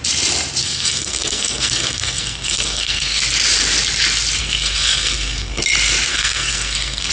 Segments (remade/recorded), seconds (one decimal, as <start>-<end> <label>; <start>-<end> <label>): 0.0-0.6 recorded; 0.6-3.2 remade; 3.2-4.4 recorded; 4.4-5.6 remade; 5.6-6.1 recorded; 6.1-7.1 remade